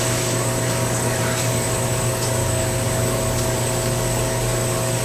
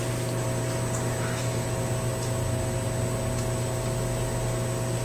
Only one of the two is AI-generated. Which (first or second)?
first